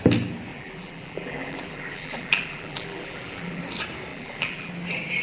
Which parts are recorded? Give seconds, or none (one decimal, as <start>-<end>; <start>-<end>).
0.0-0.5; 3.6-4.1; 4.7-5.2